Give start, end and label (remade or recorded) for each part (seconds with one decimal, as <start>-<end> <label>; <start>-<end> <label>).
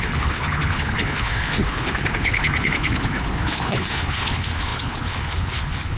0.0-6.0 remade